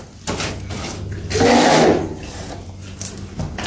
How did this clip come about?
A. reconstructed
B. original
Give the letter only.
B